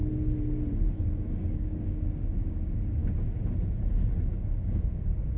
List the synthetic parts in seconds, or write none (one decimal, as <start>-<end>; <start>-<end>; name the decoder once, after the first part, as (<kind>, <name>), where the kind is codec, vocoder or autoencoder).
1.4-3.0 (codec, DAC); 4.3-5.4